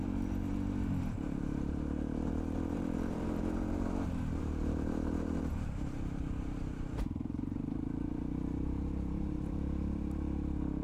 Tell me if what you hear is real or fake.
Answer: fake